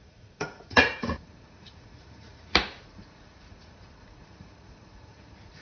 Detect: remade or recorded remade